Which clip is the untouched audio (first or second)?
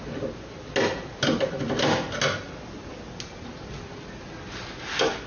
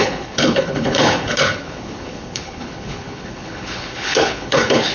first